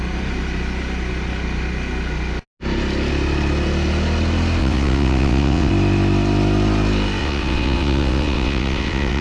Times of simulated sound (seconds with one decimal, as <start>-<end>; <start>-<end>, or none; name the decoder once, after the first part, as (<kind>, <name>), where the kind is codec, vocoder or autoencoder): 4.6-5.7 (vocoder, WaveNeXt); 7.2-9.2